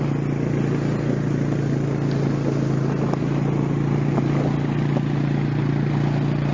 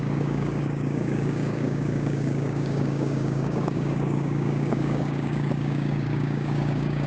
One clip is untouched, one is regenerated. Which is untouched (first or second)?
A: first